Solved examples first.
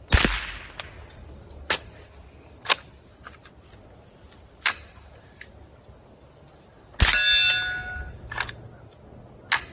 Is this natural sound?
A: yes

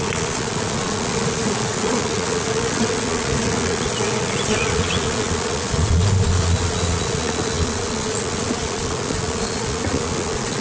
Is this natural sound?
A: no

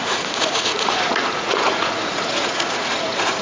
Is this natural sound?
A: no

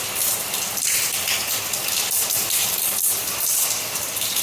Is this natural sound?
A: yes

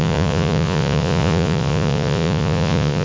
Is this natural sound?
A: no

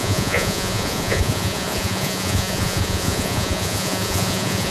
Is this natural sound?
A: no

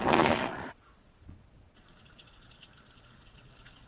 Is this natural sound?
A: no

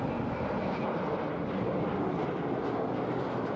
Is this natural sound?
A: yes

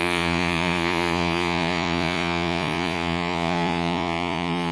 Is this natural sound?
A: no